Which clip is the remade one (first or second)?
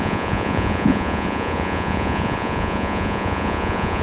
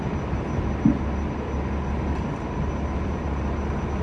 first